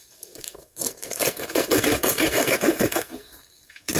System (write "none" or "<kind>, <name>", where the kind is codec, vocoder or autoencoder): codec, SNAC